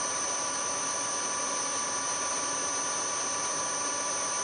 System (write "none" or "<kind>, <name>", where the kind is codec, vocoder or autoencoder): none